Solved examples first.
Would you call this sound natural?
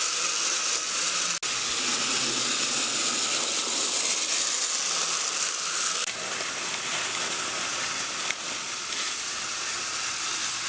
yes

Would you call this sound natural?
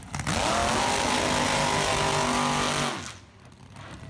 yes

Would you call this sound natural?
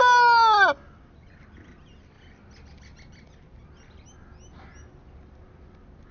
yes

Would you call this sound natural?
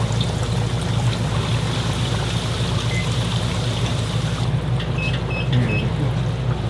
yes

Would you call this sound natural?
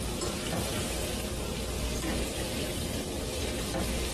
yes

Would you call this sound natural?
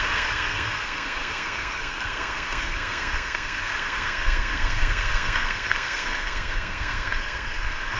no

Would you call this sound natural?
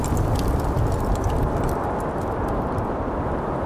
yes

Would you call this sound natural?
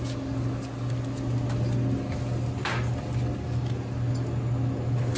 yes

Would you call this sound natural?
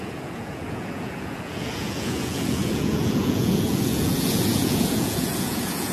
no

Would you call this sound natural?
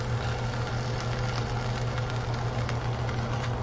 yes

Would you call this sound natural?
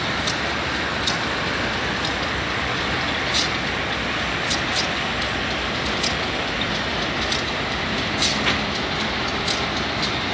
yes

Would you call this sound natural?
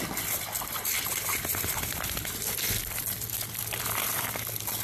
no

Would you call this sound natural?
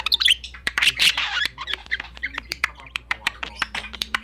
no